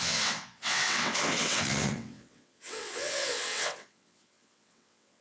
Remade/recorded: remade